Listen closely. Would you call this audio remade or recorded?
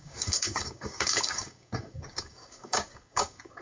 remade